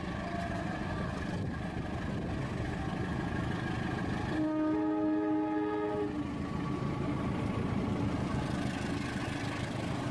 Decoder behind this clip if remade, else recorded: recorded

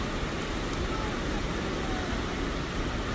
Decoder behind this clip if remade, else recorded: recorded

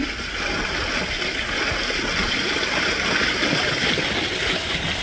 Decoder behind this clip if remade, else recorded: recorded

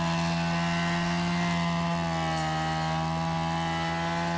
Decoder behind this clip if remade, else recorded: recorded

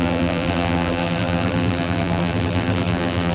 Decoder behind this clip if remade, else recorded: remade, vocoder, BigVGAN v2